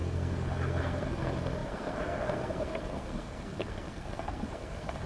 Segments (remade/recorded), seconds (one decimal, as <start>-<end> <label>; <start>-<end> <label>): 0.0-5.1 remade